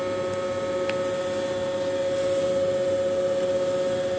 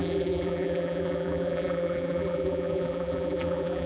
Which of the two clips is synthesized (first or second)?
second